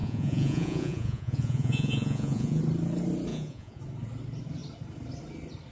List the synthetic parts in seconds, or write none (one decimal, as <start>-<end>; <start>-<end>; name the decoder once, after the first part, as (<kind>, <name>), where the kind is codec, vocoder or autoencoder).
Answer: 0.0-2.6 (vocoder, Vocos); 3.3-3.8